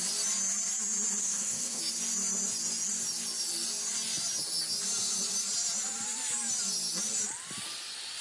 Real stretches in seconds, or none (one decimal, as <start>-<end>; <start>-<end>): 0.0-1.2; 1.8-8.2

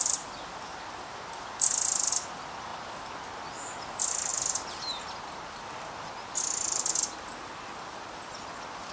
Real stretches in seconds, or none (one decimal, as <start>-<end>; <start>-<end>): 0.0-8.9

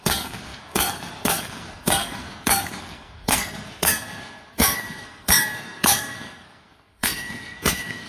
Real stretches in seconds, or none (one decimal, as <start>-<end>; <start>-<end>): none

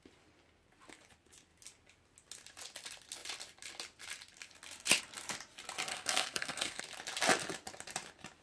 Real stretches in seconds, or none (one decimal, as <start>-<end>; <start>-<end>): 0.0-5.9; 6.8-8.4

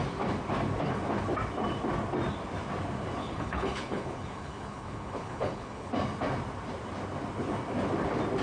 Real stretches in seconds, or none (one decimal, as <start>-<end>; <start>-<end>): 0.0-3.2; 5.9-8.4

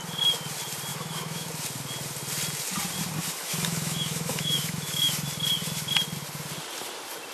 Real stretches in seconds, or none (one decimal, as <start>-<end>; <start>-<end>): 0.0-0.9; 1.5-3.4; 5.1-7.3

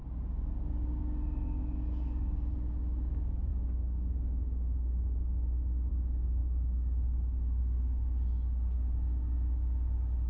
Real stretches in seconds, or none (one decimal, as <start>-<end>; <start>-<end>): 0.0-10.3

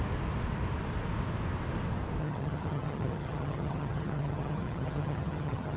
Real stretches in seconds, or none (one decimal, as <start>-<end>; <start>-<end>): 0.0-2.2